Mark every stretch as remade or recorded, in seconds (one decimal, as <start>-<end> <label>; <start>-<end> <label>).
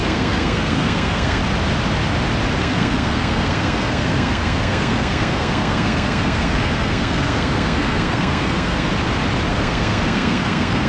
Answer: 0.0-1.4 remade; 1.4-2.6 recorded; 2.6-8.9 remade; 8.9-9.5 recorded; 9.5-10.9 remade